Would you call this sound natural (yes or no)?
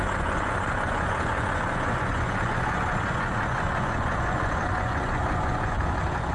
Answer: no